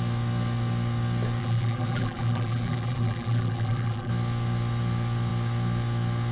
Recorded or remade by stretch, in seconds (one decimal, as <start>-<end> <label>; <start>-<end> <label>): 0.0-1.4 recorded; 1.4-4.1 remade; 4.1-6.3 recorded